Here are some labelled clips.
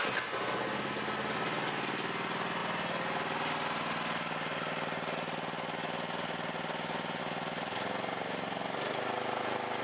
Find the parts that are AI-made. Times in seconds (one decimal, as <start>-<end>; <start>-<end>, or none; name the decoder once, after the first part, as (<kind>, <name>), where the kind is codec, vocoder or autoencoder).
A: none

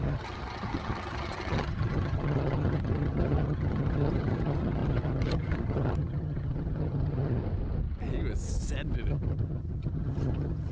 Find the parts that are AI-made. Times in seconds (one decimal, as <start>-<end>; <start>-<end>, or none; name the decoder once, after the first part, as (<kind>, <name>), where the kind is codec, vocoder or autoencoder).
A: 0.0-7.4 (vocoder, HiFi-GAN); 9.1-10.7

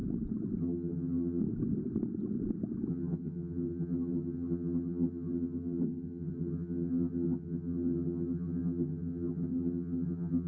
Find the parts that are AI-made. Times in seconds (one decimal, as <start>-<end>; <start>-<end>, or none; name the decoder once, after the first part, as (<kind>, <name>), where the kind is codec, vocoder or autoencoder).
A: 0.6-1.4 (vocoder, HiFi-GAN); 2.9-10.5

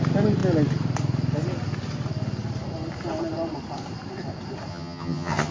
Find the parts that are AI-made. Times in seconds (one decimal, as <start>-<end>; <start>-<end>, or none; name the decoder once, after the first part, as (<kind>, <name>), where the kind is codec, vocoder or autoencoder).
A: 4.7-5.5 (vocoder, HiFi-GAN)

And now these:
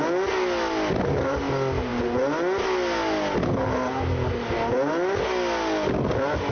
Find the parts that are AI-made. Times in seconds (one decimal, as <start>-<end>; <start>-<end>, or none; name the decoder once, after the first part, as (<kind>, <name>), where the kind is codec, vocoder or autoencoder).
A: none